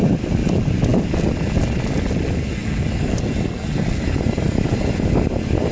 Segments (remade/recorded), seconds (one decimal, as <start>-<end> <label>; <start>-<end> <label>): 0.0-5.7 recorded